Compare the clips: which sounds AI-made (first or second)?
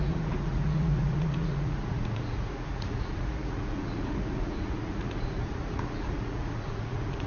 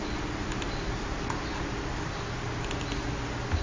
first